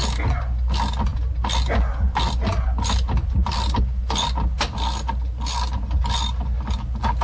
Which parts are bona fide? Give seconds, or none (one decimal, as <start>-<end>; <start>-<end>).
0.0-7.2